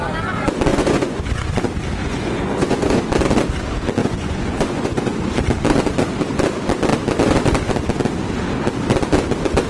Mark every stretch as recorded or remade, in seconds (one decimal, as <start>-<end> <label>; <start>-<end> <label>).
0.0-0.7 recorded; 0.7-1.5 remade; 1.5-2.0 recorded; 2.0-3.0 remade; 3.0-4.0 recorded; 4.0-5.2 remade; 5.2-9.7 recorded